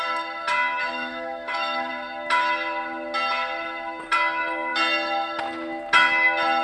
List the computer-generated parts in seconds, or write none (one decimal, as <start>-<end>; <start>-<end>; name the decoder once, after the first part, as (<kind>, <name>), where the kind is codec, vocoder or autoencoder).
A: 0.9-1.9 (autoencoder, DAC-VAE)